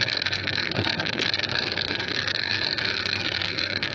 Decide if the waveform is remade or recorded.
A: remade